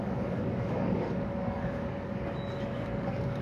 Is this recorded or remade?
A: remade